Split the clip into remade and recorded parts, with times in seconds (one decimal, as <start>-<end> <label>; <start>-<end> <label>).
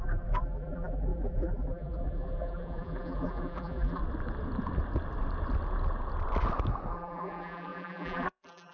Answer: 0.0-4.0 remade; 4.0-6.9 recorded; 6.9-8.7 remade